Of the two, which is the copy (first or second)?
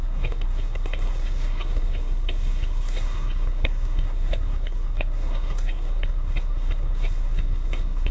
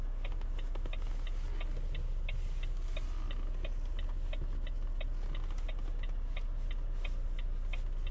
first